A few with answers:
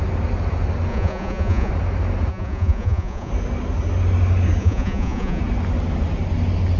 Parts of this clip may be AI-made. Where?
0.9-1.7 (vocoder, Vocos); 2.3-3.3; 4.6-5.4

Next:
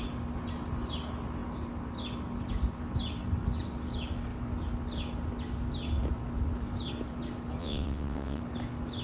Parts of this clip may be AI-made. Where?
7.6-8.4 (vocoder, WaveNeXt)